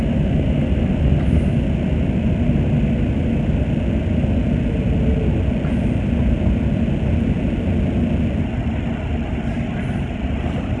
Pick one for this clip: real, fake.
real